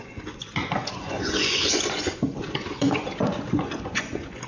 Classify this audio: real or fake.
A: fake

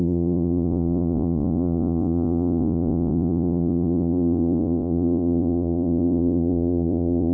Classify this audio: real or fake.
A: fake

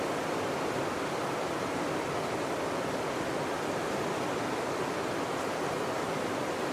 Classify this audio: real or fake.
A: real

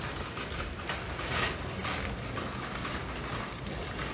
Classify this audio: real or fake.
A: real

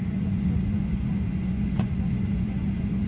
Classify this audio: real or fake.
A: fake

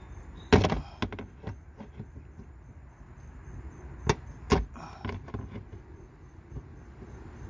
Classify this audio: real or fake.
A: real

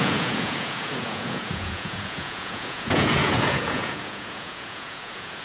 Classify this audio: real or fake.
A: fake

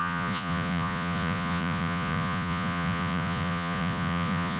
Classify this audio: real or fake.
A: fake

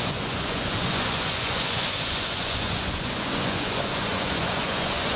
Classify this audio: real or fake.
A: fake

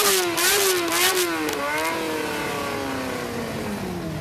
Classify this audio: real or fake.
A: real